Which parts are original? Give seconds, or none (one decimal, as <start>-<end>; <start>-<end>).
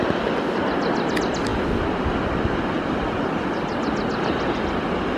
0.0-5.2